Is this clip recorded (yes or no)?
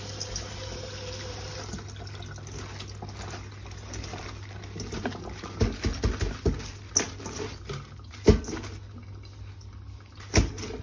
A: yes